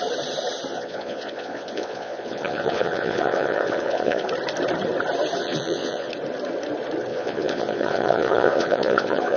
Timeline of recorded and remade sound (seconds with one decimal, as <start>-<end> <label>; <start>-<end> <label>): 0.0-0.7 recorded; 0.7-4.2 remade; 4.2-5.4 recorded; 5.4-6.1 remade; 6.1-7.1 recorded; 7.1-9.4 remade

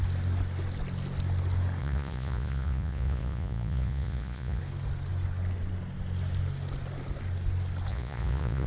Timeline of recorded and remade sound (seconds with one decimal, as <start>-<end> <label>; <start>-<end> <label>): 0.0-1.8 recorded; 1.8-4.6 remade; 4.6-7.9 recorded; 7.9-8.7 remade

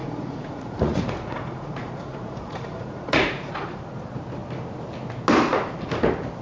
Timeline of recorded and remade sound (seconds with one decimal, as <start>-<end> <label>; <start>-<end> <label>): 0.0-3.8 remade; 3.8-6.4 recorded

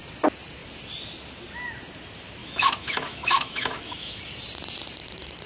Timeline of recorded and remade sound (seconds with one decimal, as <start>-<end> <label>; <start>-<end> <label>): 0.0-2.4 recorded; 2.4-4.2 remade; 4.2-5.5 recorded

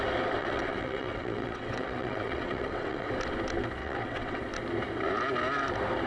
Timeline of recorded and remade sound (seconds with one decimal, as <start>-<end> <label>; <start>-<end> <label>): 0.0-0.4 recorded; 0.4-3.1 remade; 3.1-3.8 recorded; 3.8-4.4 remade; 4.4-6.1 recorded

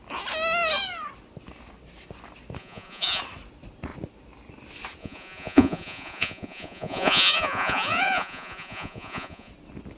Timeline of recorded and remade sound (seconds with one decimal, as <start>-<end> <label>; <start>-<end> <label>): 0.0-2.6 recorded; 2.6-3.2 remade; 3.2-5.0 recorded; 5.0-9.5 remade; 9.5-10.0 recorded

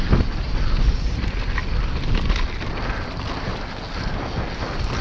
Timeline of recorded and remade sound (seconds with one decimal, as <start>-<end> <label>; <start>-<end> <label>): 0.0-5.0 recorded